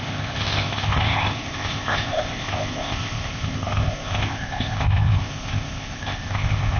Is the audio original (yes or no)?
no